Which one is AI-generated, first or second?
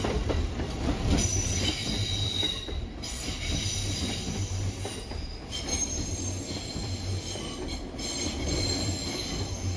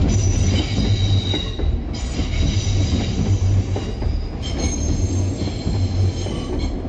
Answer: first